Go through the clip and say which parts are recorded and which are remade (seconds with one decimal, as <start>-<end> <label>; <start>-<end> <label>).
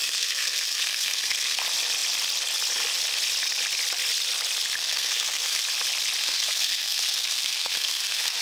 0.0-1.6 remade; 1.6-4.8 recorded; 4.8-5.6 remade; 5.6-6.2 recorded; 6.2-8.4 remade